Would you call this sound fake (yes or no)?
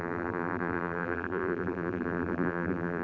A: yes